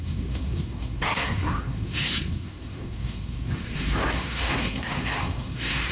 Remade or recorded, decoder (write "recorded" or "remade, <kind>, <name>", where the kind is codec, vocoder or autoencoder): remade, codec, SNAC